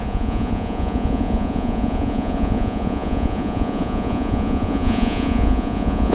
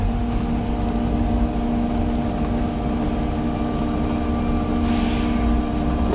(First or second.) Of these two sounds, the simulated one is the first